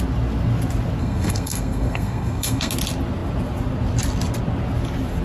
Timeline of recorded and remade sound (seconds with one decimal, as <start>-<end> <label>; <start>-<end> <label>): 0.0-1.0 recorded; 1.0-2.7 remade; 2.7-5.2 recorded